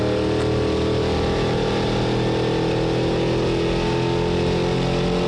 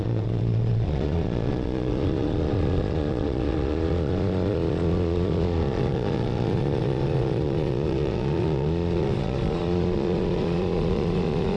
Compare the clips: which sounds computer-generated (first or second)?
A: second